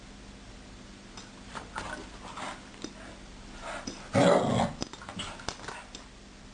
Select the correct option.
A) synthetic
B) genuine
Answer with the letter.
B